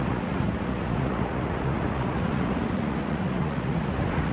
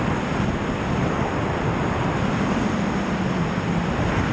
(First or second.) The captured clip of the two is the second